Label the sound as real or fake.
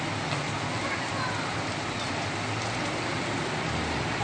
real